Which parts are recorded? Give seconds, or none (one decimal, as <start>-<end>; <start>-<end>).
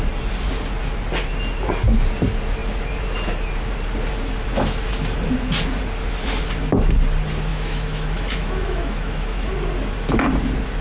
0.0-7.5; 9.5-10.8